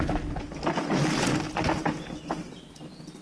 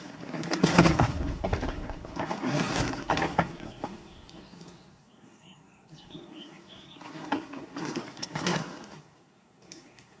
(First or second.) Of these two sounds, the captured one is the first